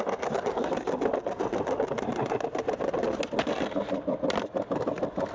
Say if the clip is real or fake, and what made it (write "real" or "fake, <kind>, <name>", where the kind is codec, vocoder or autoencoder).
real